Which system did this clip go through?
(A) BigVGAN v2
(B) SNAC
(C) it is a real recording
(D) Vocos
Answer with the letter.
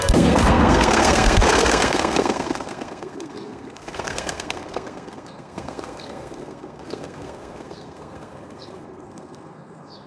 B